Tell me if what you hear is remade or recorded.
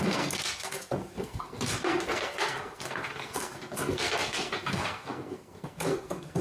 remade